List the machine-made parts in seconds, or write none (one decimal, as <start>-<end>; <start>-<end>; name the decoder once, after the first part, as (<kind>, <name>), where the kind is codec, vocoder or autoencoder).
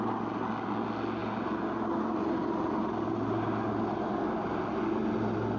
none